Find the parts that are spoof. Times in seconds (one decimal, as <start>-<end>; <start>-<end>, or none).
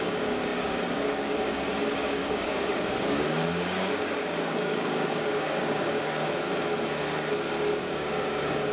0.0-6.5; 7.8-8.7